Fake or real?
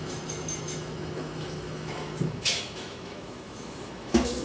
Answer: fake